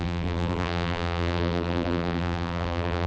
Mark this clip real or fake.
fake